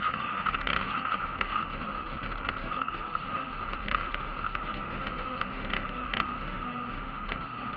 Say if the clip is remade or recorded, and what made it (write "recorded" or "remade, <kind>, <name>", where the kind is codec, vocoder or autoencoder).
remade, autoencoder, DAC-VAE